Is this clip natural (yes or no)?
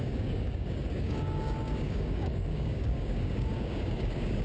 no